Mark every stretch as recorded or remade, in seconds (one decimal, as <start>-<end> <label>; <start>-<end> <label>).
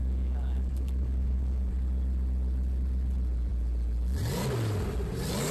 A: 0.0-1.7 remade; 1.7-5.5 recorded